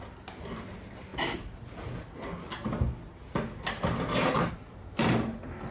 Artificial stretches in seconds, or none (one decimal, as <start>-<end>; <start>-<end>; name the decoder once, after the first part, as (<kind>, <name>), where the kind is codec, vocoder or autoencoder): none